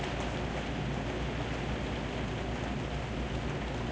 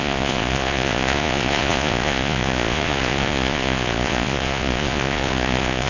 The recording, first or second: first